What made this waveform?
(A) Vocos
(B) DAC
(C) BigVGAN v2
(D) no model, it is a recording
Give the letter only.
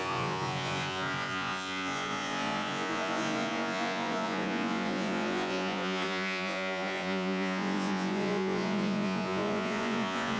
A